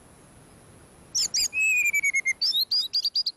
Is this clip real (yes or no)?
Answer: yes